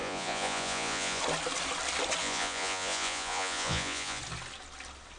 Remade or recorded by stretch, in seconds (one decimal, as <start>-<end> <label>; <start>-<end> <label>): 0.0-1.2 remade; 1.2-2.2 recorded; 2.2-4.2 remade; 4.2-5.2 recorded